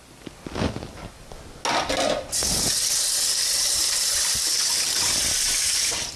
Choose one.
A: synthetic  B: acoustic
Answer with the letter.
B